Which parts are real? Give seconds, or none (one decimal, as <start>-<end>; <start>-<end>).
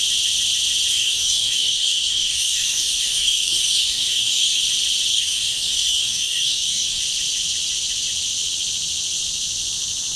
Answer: 0.0-0.9; 4.6-5.1; 7.0-10.2